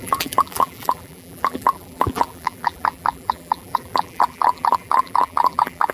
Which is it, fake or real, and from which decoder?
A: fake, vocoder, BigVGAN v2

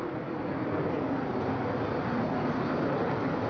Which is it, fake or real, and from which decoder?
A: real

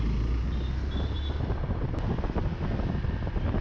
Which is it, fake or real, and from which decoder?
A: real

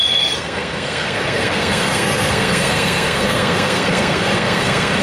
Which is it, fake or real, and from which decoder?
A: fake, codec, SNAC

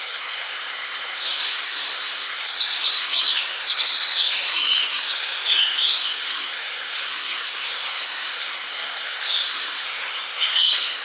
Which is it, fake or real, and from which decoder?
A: fake, codec, SNAC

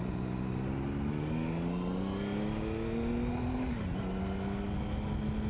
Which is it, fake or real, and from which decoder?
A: real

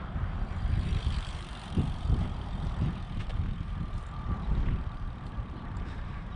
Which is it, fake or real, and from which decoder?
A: fake, vocoder, BigVGAN v2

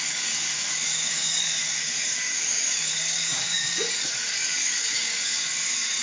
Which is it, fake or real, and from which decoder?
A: fake, codec, DAC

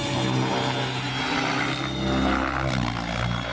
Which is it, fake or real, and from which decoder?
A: real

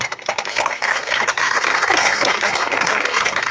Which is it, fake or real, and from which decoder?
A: fake, codec, SNAC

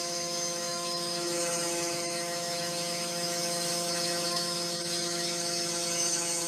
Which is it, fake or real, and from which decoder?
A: fake, autoencoder, DAC-VAE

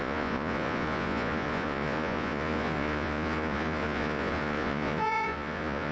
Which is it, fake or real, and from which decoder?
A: fake, vocoder, Vocos